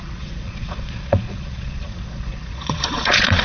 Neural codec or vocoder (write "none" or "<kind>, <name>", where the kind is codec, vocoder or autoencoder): vocoder, Vocos